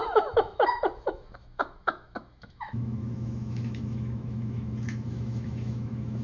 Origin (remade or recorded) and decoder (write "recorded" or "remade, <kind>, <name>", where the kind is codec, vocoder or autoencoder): remade, autoencoder, DAC-VAE